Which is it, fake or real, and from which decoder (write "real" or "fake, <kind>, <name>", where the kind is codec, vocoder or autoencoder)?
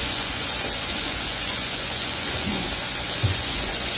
fake, vocoder, Vocos